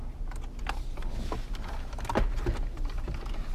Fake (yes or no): no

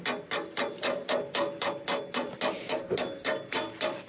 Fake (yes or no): no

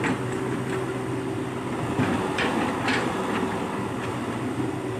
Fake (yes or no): no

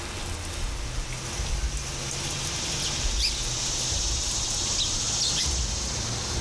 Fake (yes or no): no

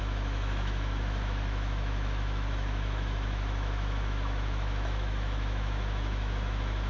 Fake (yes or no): yes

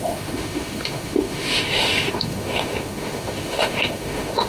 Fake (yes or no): yes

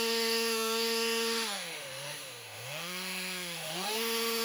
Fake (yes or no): yes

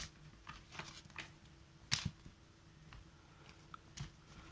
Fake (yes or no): no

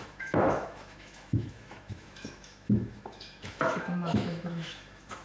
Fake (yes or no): yes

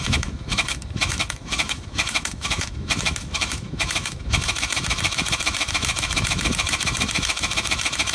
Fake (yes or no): yes